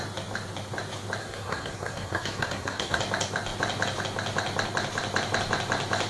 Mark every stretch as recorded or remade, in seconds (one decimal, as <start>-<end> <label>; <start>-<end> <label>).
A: 0.0-1.2 recorded; 1.2-3.0 remade; 3.0-6.1 recorded